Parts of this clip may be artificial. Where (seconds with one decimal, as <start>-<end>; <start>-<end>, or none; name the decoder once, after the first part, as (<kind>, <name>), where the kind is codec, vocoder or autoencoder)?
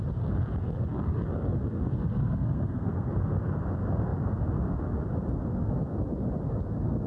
2.2-3.1 (codec, SNAC)